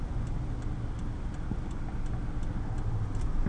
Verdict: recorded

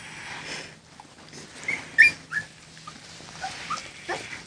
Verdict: recorded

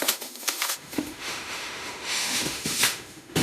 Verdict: remade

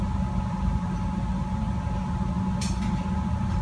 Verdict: recorded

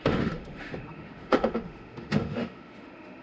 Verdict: remade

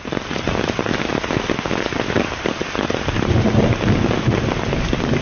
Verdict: recorded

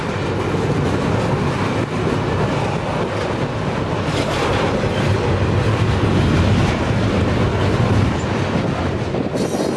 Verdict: recorded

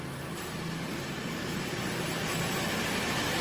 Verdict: recorded